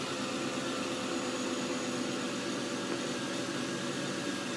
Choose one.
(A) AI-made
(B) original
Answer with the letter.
B